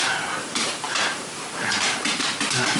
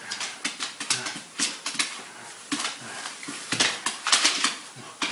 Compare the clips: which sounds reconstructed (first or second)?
first